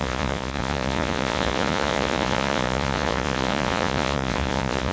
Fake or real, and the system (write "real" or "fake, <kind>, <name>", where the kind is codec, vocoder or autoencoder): fake, vocoder, Vocos